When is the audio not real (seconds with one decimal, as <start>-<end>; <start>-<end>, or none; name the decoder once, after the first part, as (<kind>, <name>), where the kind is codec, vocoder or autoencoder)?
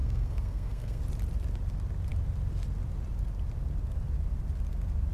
0.0-1.0 (codec, SNAC)